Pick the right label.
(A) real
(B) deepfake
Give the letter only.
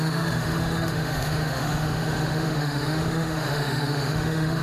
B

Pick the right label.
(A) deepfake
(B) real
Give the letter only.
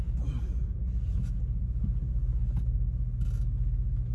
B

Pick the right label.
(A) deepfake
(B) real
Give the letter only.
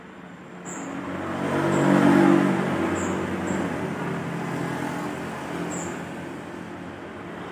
B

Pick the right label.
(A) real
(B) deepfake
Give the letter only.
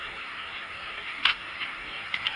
B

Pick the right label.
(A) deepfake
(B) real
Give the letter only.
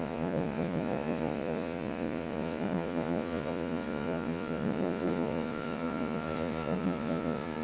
A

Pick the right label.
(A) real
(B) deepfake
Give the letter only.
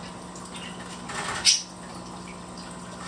A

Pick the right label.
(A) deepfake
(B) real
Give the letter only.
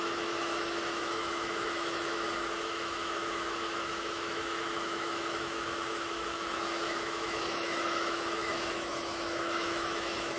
A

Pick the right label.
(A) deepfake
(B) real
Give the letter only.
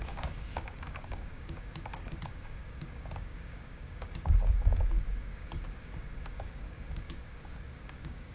A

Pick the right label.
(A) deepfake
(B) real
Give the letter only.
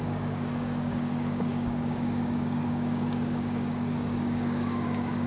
A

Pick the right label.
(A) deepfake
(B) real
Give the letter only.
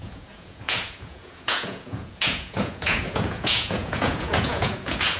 A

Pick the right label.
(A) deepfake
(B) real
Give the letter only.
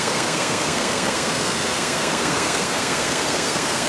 A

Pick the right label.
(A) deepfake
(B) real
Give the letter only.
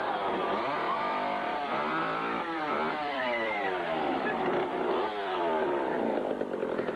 A